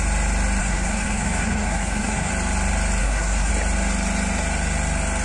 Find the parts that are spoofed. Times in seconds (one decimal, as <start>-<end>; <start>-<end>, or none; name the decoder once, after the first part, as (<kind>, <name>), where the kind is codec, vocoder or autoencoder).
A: 0.6-2.3 (codec, SNAC); 3.0-3.5